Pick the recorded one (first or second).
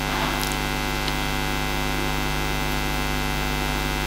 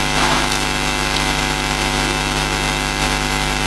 first